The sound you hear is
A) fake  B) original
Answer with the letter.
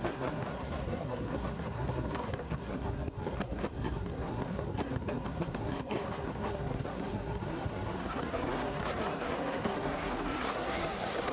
A